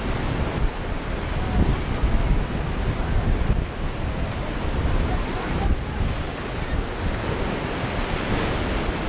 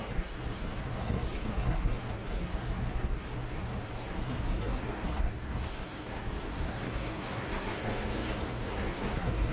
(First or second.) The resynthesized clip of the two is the second